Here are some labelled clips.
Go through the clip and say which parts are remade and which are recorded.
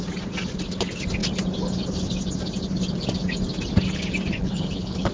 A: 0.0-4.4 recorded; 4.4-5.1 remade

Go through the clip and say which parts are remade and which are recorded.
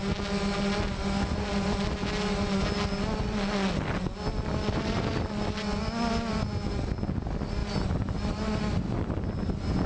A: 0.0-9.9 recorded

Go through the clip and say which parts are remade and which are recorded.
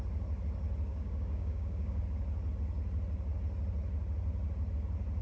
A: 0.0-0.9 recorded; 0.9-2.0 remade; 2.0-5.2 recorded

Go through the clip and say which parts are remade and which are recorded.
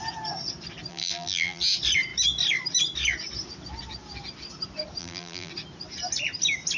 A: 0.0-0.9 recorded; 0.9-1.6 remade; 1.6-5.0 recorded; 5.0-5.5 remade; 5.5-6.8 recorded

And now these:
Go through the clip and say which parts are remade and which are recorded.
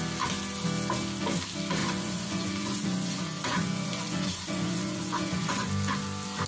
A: 0.0-1.8 recorded; 1.8-5.7 remade; 5.7-6.5 recorded